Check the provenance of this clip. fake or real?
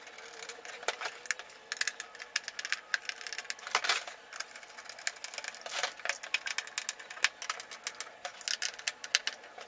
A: real